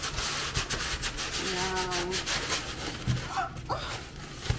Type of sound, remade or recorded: recorded